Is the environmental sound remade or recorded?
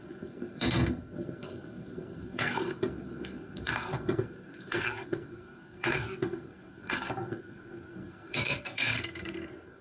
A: remade